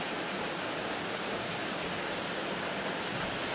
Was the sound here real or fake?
real